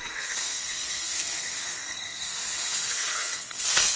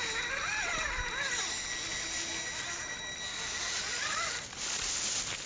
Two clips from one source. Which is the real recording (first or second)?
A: second